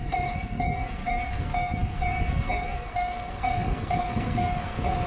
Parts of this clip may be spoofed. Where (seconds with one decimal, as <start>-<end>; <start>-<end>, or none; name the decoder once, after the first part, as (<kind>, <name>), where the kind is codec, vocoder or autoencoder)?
0.0-5.1 (codec, SNAC)